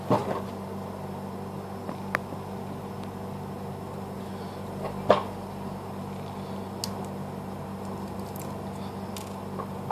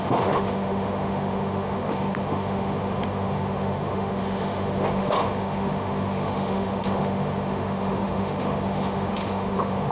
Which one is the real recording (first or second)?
first